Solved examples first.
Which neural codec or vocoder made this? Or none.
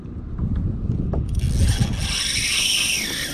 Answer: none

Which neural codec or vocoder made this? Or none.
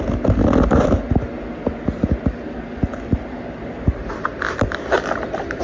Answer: none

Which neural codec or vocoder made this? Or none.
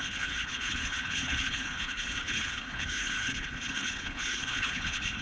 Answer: codec, HILCodec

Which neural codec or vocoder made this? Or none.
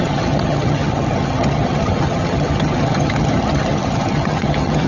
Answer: vocoder, HiFi-GAN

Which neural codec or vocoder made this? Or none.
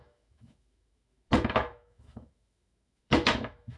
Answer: autoencoder, DAC-VAE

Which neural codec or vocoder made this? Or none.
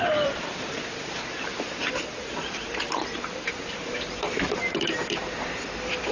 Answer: vocoder, BigVGAN v2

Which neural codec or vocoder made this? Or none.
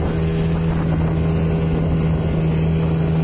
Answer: none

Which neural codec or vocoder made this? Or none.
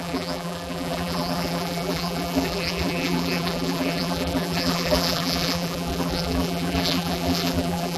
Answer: vocoder, BigVGAN v2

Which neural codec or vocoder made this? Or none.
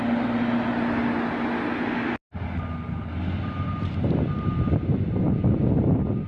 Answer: none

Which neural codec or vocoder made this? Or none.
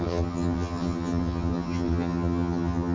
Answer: vocoder, HiFi-GAN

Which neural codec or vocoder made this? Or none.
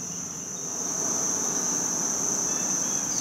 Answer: none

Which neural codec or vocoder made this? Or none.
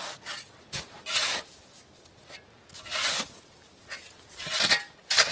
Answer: none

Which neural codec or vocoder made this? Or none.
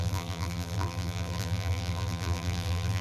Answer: vocoder, BigVGAN v2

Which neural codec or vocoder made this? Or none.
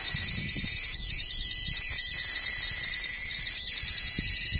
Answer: none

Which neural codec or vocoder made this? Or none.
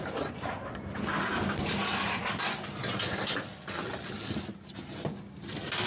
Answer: none